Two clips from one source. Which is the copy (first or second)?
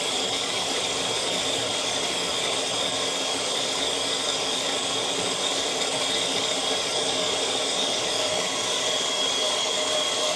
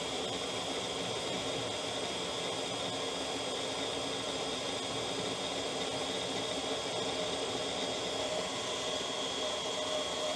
first